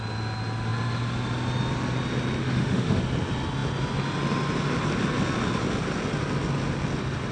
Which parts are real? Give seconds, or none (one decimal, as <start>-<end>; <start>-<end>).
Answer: 0.0-2.4; 3.0-7.3